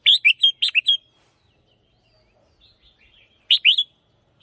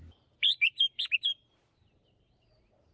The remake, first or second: second